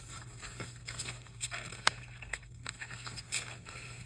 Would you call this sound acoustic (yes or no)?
no